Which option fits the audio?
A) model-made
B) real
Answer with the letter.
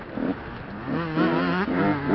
B